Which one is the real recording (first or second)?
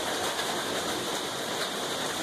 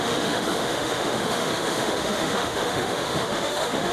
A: first